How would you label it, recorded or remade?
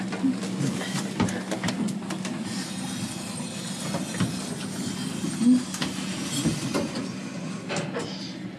recorded